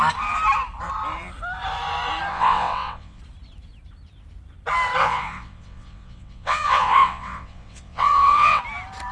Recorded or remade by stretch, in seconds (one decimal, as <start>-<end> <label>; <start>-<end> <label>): 0.0-2.3 recorded; 2.3-3.2 remade; 3.2-5.0 recorded; 5.0-8.6 remade; 8.6-9.1 recorded